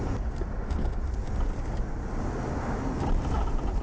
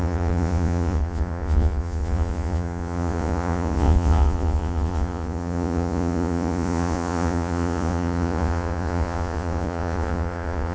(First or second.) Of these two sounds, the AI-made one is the second